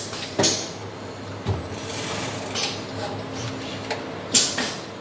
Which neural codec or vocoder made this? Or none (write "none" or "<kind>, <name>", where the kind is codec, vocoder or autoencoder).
none